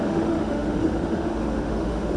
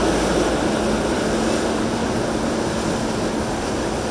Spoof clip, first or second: first